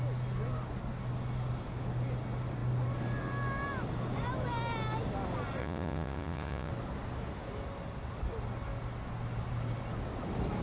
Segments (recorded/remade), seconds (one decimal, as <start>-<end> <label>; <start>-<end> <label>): 0.0-5.6 recorded; 5.6-6.7 remade; 6.7-10.6 recorded